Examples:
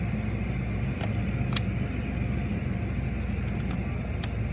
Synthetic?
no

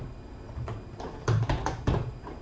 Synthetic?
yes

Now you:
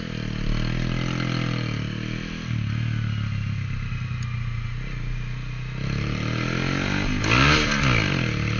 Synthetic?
no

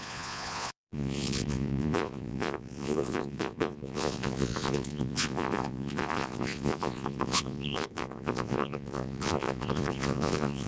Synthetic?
yes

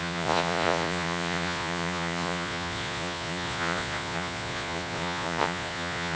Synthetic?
yes